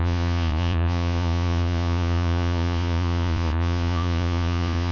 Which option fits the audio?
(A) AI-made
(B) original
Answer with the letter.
A